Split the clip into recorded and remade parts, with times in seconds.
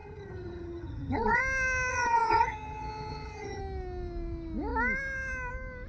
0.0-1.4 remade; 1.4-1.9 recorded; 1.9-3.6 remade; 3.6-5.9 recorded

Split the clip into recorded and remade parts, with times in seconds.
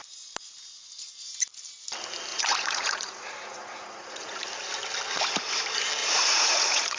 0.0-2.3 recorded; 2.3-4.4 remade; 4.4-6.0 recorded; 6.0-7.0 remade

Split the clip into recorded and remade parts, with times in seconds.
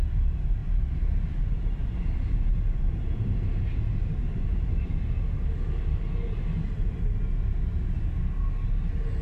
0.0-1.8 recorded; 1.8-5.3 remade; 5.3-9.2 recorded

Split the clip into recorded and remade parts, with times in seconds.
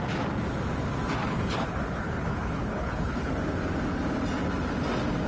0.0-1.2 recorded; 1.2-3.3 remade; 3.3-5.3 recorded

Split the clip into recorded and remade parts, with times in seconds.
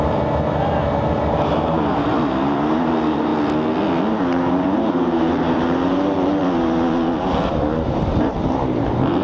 0.0-2.1 remade; 2.1-2.7 recorded; 2.7-3.3 remade; 3.3-4.1 recorded; 4.1-6.4 remade; 6.4-7.2 recorded; 7.2-9.2 remade